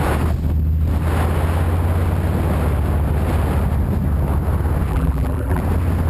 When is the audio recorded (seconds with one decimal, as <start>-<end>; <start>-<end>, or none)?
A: 0.0-4.9; 5.6-6.1